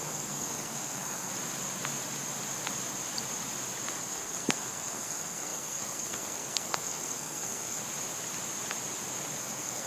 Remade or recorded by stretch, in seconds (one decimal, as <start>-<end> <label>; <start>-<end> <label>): 0.0-1.3 remade; 1.3-4.0 recorded; 4.0-7.8 remade; 7.8-9.4 recorded; 9.4-9.9 remade